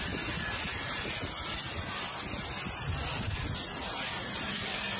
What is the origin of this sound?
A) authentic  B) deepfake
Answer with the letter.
A